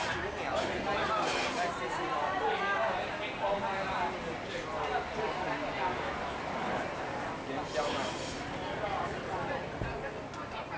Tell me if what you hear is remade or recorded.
recorded